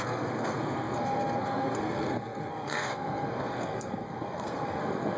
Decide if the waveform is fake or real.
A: fake